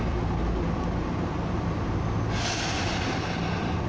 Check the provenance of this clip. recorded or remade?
recorded